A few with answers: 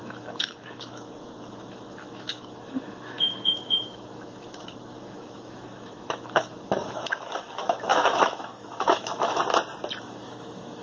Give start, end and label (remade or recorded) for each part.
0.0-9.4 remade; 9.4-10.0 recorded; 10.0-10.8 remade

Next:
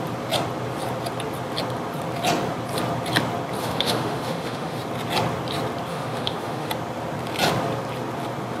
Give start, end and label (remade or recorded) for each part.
0.0-3.6 recorded; 3.6-4.8 remade; 4.8-5.9 recorded; 5.9-6.7 remade; 6.7-8.6 recorded

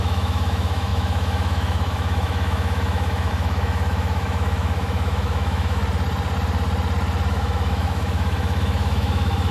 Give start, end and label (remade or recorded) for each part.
0.0-5.8 remade; 5.8-7.3 recorded; 7.3-9.5 remade

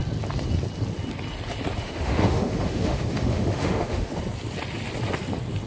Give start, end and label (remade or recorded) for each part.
0.0-1.8 recorded; 1.8-4.2 remade; 4.2-5.7 recorded

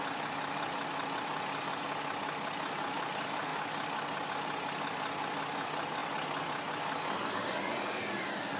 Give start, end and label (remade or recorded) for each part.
0.0-8.6 recorded

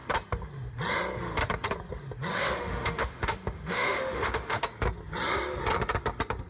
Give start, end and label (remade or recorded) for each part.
0.0-2.3 recorded; 2.3-4.6 remade; 4.6-6.5 recorded